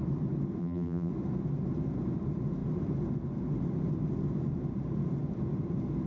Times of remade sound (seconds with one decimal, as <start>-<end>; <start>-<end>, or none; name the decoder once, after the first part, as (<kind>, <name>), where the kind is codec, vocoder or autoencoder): 0.6-1.1 (vocoder, BigVGAN v2)